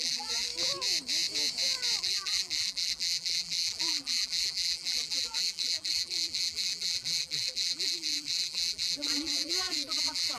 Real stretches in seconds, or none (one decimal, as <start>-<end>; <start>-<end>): 0.5-2.0